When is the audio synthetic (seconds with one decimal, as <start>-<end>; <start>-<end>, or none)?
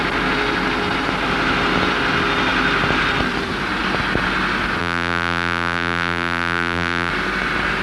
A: 4.8-7.1